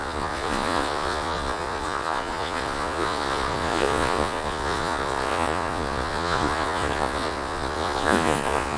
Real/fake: fake